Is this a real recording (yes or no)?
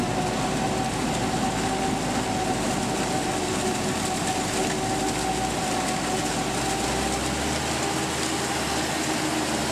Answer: yes